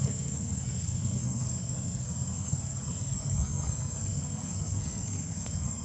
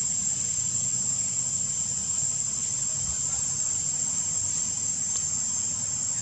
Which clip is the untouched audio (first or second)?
second